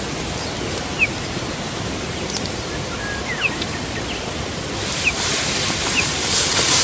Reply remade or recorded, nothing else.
recorded